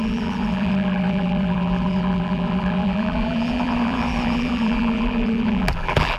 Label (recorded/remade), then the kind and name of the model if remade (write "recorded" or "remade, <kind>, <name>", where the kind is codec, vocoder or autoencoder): remade, vocoder, BigVGAN v2